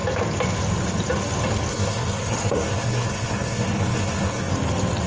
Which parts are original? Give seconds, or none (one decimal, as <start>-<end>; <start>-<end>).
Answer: 0.0-1.7; 4.5-5.1